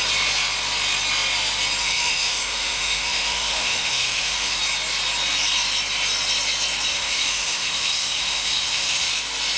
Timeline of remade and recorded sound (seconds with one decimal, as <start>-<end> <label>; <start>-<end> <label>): 0.0-1.8 recorded; 1.8-4.6 remade; 4.6-6.9 recorded; 6.9-9.1 remade; 9.1-9.6 recorded